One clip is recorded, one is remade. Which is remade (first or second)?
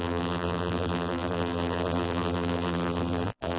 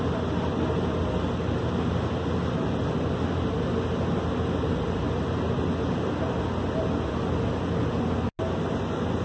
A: first